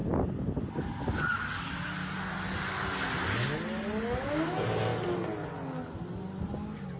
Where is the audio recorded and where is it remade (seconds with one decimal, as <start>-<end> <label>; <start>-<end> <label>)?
0.0-0.6 remade; 0.6-7.0 recorded